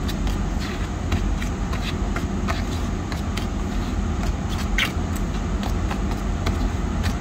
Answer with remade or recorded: recorded